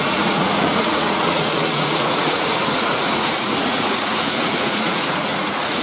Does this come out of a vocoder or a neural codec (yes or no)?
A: yes